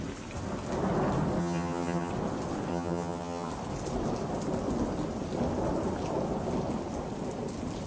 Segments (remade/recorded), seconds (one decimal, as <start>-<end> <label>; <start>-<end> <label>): 0.0-1.4 recorded; 1.4-2.1 remade; 2.1-2.7 recorded; 2.7-3.5 remade; 3.5-7.9 recorded